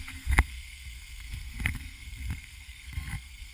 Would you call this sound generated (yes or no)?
yes